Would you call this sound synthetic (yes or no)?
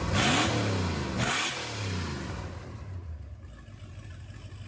no